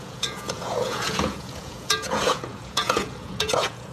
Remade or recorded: remade